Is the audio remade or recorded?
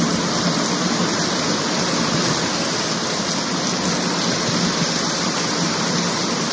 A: recorded